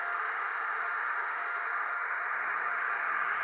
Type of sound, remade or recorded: remade